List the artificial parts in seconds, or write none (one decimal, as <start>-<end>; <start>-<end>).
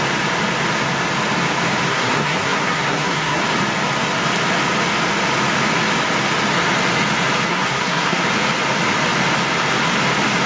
1.9-3.4; 7.5-8.2